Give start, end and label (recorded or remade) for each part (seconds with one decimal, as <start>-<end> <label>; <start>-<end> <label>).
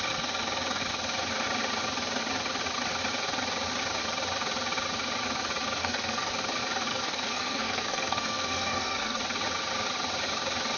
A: 0.0-5.8 recorded; 5.8-6.3 remade; 6.3-6.9 recorded; 6.9-9.2 remade; 9.2-10.8 recorded